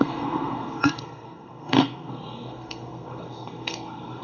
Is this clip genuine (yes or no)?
no